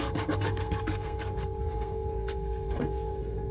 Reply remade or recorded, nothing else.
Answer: remade